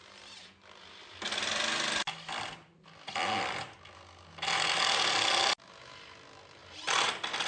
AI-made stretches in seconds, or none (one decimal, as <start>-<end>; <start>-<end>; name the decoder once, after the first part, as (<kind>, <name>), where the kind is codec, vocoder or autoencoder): none

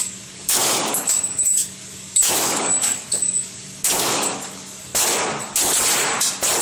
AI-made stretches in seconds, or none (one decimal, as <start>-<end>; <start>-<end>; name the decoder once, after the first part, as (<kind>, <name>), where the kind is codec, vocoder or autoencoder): 0.0-4.9 (codec, DAC)

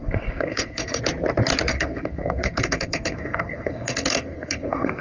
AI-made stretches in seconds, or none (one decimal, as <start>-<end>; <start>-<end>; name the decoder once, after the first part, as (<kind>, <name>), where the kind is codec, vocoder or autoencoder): 0.0-1.0 (codec, SNAC); 1.7-5.0

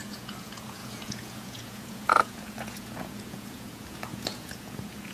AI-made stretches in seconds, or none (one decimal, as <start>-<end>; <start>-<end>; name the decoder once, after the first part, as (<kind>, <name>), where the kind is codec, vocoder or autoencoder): 0.0-5.1 (vocoder, Vocos)

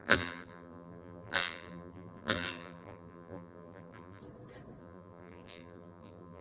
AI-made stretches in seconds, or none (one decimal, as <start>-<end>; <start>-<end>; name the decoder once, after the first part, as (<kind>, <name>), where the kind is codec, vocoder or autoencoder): 0.0-4.2 (vocoder, BigVGAN v2); 4.8-6.4

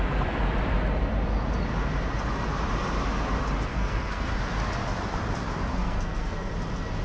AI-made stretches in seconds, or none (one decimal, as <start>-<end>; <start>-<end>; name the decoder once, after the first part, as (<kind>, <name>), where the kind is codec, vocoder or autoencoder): 3.7-4.4 (codec, SNAC); 5.7-6.5

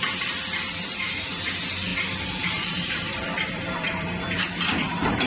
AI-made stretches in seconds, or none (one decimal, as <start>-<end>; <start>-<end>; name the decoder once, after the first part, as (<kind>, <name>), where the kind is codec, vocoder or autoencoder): 1.9-5.3 (vocoder, BigVGAN v2)